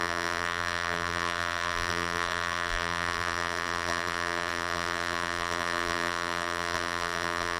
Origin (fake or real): fake